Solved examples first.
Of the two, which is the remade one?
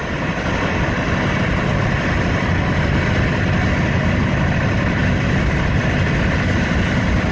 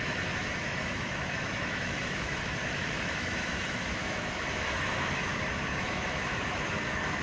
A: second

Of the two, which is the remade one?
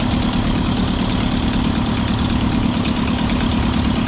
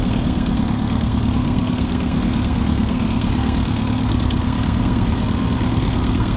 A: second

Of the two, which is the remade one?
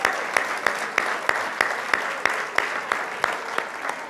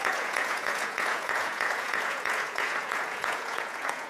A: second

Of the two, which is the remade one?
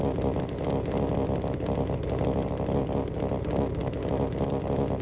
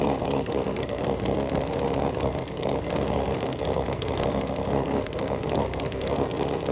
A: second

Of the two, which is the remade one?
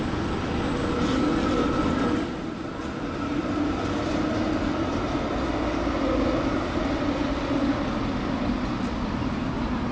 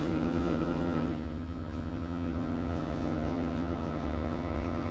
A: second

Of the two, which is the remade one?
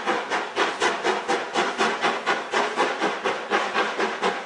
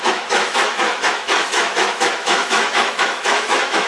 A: second